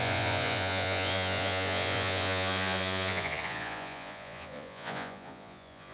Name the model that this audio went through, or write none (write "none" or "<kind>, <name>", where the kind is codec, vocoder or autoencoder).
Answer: vocoder, Vocos